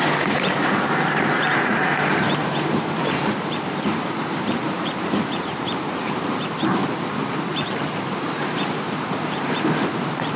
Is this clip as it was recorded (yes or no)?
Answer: no